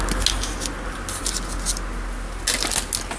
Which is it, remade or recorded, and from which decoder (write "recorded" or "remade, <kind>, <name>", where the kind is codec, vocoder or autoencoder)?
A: recorded